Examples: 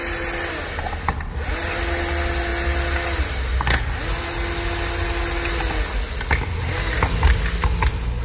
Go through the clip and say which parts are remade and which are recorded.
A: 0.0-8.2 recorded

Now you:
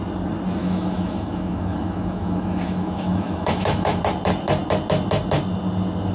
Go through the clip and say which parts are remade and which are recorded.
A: 0.0-0.6 recorded; 0.6-4.0 remade; 4.0-6.1 recorded

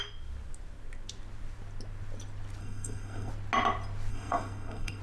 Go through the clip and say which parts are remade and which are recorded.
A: 0.0-2.6 recorded; 2.6-3.3 remade; 3.3-4.1 recorded; 4.1-5.0 remade

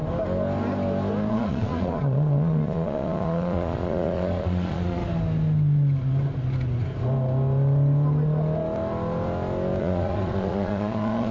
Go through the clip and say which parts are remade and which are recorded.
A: 0.0-1.3 recorded; 1.3-5.0 remade; 5.0-9.8 recorded; 9.8-11.3 remade

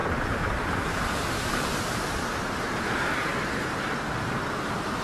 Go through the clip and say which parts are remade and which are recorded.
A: 0.0-3.3 remade; 3.3-4.5 recorded; 4.5-5.0 remade

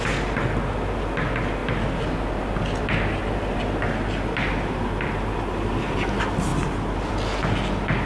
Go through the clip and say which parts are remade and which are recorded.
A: 0.0-8.1 recorded

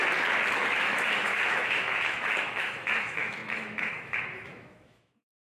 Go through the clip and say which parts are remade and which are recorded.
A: 0.0-0.6 recorded; 0.6-5.4 remade